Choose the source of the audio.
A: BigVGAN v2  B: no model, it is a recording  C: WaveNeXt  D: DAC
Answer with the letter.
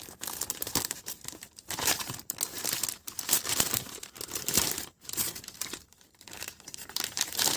A